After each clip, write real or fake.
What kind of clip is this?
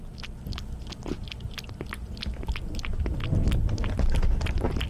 real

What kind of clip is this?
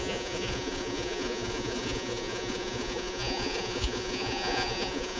fake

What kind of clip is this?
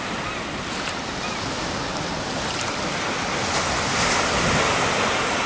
real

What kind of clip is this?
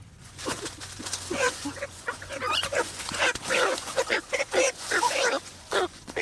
fake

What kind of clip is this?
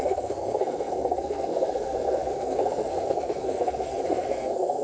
fake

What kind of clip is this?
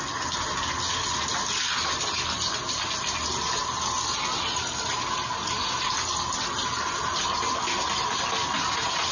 real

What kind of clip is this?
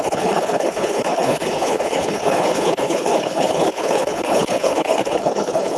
fake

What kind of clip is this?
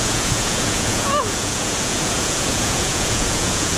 fake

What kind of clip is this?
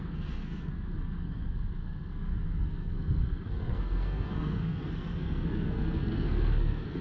fake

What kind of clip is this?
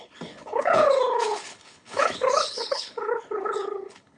fake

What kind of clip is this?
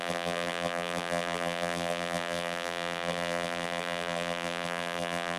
fake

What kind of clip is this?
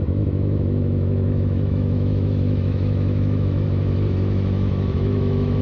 fake